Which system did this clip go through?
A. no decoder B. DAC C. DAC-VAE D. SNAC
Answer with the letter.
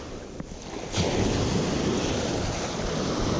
A